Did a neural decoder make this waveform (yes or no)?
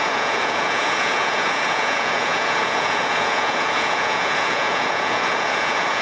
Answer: yes